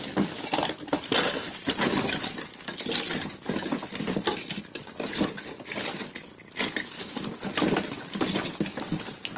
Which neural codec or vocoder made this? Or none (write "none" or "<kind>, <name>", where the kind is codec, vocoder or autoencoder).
none